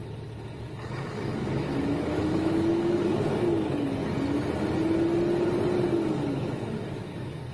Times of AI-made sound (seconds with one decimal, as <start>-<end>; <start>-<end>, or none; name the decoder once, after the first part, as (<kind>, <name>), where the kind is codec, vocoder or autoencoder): 0.6-4.0 (codec, DAC); 5.9-7.5

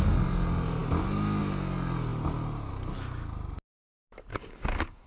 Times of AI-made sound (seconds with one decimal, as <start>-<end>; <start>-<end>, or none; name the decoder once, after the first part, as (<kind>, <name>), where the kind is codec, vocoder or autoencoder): 4.3-5.1 (codec, DAC)

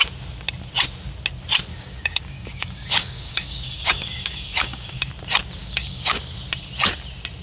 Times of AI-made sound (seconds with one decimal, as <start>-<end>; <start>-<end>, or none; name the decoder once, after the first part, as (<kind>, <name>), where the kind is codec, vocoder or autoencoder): 1.7-5.1 (codec, DAC); 5.6-6.2

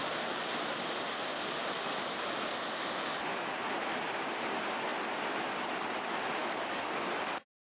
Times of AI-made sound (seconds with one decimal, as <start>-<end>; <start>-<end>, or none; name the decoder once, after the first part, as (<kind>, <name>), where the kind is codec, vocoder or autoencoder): 6.4-7.7 (codec, DAC)

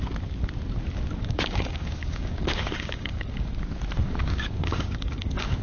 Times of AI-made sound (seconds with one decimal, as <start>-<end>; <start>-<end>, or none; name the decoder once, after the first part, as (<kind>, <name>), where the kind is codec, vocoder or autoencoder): 1.2-3.5 (codec, DAC); 4.0-5.6

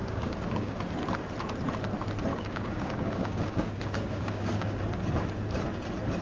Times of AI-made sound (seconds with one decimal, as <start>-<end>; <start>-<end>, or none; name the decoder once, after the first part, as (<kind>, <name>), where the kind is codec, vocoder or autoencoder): 0.0-0.8 (codec, DAC); 2.3-4.8